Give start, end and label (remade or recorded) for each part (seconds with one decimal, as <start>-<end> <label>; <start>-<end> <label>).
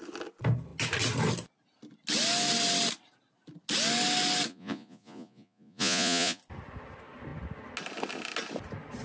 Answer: 0.0-4.5 recorded; 4.5-6.4 remade; 6.4-9.0 recorded